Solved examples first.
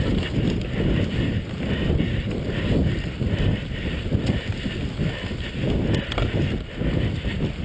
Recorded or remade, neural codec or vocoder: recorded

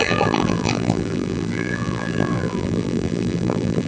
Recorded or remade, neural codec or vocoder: remade, vocoder, BigVGAN v2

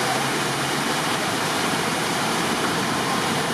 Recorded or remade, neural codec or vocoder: remade, vocoder, BigVGAN v2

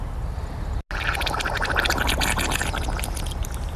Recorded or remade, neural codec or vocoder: recorded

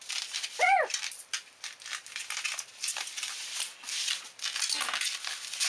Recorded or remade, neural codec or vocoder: recorded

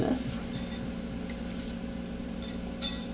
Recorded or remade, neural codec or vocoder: recorded